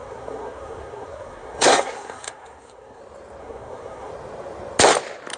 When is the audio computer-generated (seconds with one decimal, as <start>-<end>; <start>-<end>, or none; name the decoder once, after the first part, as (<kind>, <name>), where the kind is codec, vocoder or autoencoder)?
0.0-3.0 (codec, SNAC); 3.4-4.1